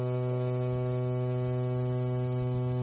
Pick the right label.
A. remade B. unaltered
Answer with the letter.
B